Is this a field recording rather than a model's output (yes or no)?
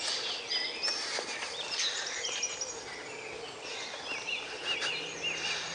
yes